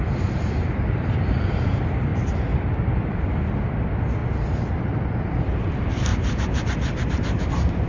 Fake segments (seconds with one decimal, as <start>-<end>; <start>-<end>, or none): 0.0-2.1; 3.8-4.2; 4.8-7.9